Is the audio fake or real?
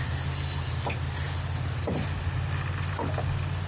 real